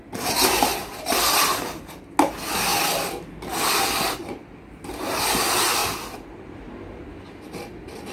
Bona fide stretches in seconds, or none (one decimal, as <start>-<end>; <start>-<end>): 0.0-5.8; 6.9-8.1

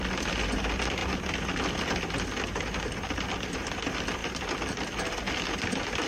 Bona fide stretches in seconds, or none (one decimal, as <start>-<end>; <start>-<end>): 0.0-6.1

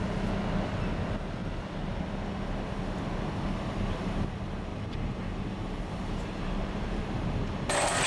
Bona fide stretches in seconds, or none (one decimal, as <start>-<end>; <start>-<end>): 0.0-4.7; 7.0-8.1

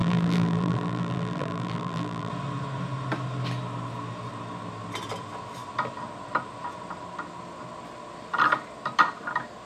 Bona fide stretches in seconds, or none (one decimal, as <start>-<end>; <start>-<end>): 2.3-9.7

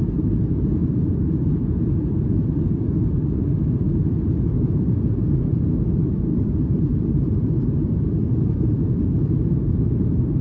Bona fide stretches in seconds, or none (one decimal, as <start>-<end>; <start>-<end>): 0.0-0.8; 2.2-6.3